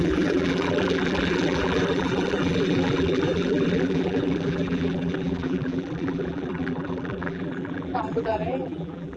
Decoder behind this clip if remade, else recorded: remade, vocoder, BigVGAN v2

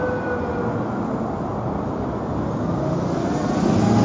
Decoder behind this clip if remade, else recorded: recorded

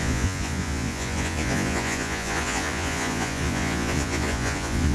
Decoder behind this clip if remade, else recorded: remade, vocoder, Vocos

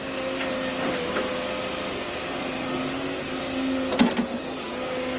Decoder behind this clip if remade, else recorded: recorded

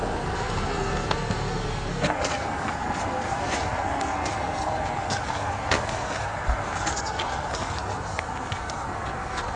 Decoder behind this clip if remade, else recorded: remade, codec, SNAC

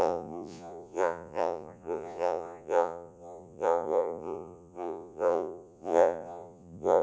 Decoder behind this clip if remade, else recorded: remade, vocoder, Vocos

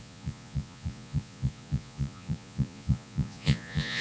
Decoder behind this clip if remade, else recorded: remade, vocoder, Vocos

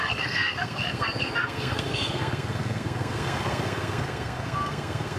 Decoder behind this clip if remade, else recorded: remade, codec, SNAC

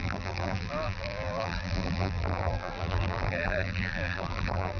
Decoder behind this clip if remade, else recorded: remade, vocoder, BigVGAN v2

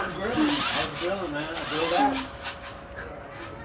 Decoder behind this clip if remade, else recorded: recorded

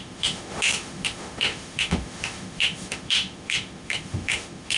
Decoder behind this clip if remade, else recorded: remade, autoencoder, DAC-VAE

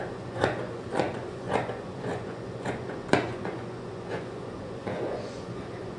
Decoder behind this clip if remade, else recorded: remade, vocoder, Vocos